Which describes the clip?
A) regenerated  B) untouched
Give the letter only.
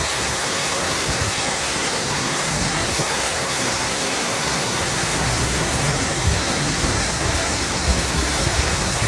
A